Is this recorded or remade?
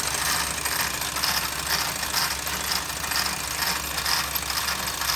recorded